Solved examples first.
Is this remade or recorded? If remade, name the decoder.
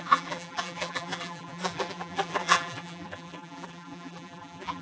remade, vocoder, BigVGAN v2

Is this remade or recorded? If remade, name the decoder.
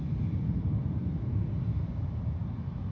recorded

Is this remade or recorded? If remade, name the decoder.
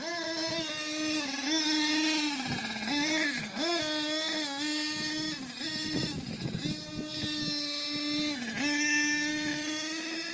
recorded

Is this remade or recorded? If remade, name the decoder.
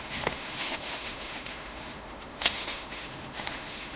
remade, autoencoder, DAC-VAE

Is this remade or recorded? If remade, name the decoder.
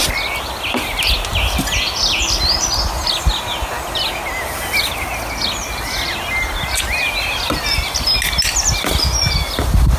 recorded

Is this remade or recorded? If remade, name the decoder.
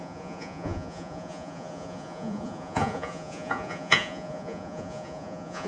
remade, vocoder, Vocos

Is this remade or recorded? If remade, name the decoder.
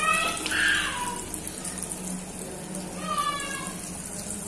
recorded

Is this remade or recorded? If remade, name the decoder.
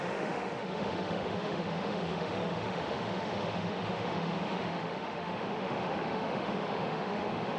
remade, autoencoder, DAC-VAE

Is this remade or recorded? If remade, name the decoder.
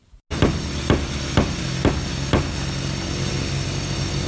recorded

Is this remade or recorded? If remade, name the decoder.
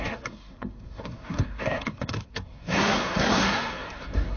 remade, codec, SNAC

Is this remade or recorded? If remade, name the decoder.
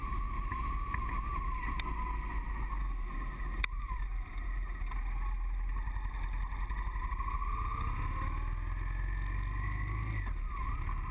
recorded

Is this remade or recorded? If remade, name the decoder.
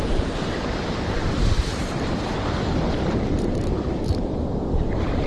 remade, vocoder, BigVGAN v2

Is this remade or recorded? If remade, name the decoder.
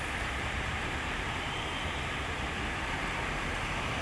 remade, vocoder, BigVGAN v2